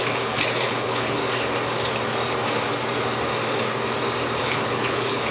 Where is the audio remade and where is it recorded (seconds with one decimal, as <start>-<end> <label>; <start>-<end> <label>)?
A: 0.0-1.2 remade; 1.2-4.4 recorded; 4.4-5.3 remade